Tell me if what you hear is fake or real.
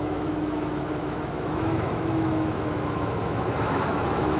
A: fake